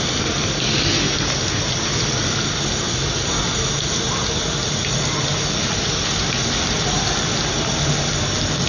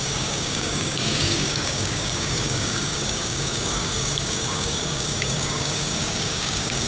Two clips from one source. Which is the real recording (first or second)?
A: first